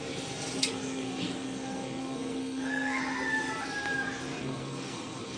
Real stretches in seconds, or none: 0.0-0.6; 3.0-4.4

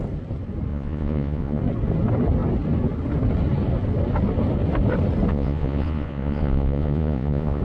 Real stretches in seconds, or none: 0.0-0.7; 1.6-5.3